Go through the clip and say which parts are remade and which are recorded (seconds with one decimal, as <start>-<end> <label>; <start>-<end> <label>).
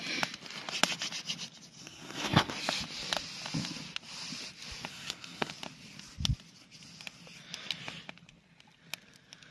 0.0-1.8 recorded; 1.8-2.5 remade; 2.5-4.9 recorded; 4.9-5.5 remade; 5.5-9.5 recorded